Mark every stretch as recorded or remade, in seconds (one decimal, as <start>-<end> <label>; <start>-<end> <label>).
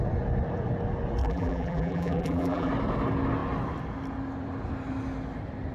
0.0-1.2 recorded; 1.2-2.7 remade; 2.7-5.7 recorded